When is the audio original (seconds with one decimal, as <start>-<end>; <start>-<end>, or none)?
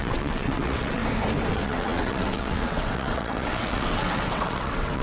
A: 1.0-1.5